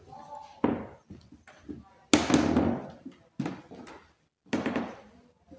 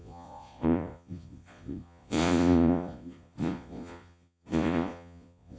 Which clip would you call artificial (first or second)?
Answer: second